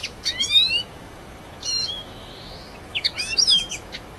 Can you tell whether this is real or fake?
fake